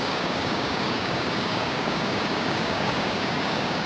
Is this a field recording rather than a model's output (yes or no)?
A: no